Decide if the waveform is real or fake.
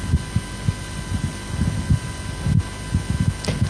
real